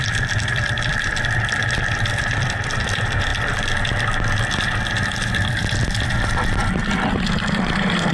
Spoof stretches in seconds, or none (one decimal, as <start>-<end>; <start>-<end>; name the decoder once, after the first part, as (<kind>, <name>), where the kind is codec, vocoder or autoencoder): 0.0-3.3 (vocoder, BigVGAN v2); 4.4-6.6; 7.3-8.1